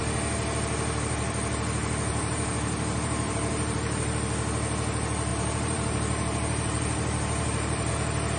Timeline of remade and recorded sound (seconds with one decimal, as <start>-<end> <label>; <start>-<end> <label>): 0.0-2.1 recorded; 2.1-4.1 remade; 4.1-5.3 recorded; 5.3-7.9 remade; 7.9-8.4 recorded